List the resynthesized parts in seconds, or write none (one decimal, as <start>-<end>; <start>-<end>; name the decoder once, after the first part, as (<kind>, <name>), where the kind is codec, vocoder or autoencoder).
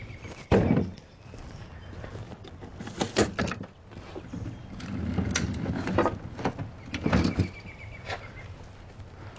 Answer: none